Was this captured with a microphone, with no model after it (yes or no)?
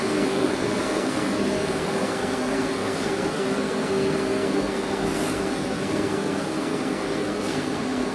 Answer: no